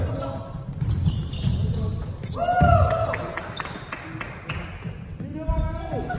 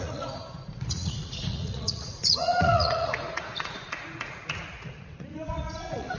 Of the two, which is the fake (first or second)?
second